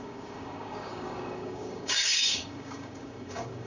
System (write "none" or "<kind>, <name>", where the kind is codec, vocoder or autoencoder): codec, DAC